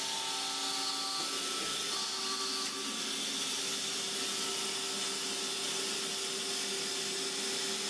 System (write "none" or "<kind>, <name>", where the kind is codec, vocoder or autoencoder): none